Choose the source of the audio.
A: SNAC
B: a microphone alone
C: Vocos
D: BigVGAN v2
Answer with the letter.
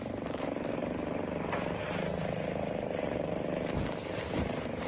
B